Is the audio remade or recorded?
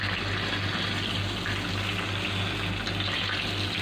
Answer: recorded